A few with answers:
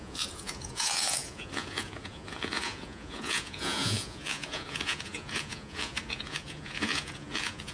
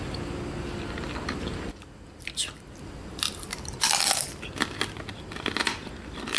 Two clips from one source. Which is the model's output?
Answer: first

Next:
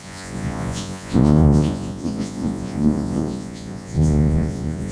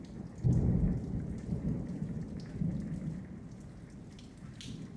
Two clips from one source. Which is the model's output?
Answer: first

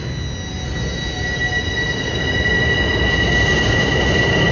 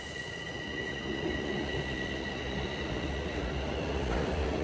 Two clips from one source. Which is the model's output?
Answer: second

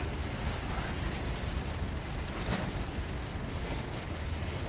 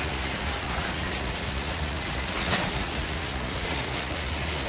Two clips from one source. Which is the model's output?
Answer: second